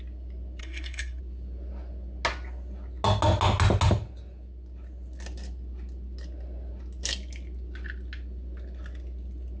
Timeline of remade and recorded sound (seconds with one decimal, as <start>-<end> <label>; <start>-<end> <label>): 0.0-0.6 recorded; 0.6-1.2 remade; 1.2-9.6 recorded